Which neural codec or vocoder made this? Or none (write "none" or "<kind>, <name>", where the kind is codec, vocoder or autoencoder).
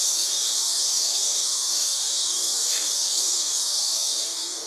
codec, DAC